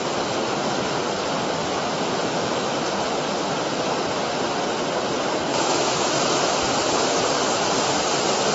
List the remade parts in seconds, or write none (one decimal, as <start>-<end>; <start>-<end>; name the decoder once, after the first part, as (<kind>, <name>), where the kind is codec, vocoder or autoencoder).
1.6-2.8 (autoencoder, DAC-VAE); 5.5-6.1

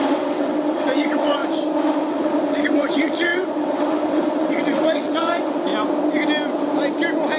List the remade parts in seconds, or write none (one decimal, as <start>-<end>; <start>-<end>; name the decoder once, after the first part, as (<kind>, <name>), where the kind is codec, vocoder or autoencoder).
0.0-1.4 (vocoder, WaveNeXt); 2.1-5.7

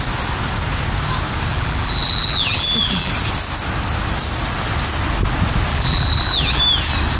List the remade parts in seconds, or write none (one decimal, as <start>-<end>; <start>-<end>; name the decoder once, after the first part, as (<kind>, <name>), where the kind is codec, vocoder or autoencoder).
1.5-3.1 (vocoder, BigVGAN v2); 5.7-6.6

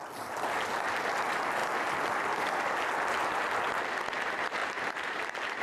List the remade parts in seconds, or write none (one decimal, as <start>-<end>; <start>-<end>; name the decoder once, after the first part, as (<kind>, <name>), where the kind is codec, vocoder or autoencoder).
4.6-5.6 (vocoder, BigVGAN v2)

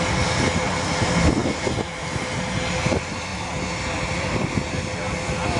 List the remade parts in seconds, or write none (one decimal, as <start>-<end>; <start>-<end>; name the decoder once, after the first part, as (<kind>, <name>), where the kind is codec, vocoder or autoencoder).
none

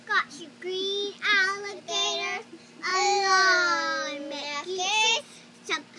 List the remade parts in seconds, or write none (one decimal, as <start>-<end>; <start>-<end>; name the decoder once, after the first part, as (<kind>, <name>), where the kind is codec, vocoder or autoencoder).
none